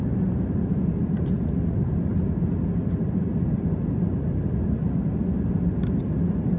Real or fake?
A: real